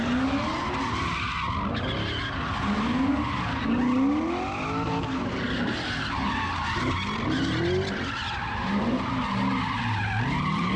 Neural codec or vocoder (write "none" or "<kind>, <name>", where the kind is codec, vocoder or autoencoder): none